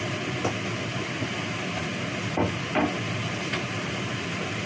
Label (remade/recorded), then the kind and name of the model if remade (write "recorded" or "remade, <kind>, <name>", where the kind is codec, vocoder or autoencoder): recorded